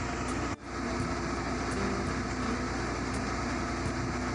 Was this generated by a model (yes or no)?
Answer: no